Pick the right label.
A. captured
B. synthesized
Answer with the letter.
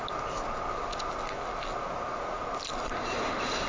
A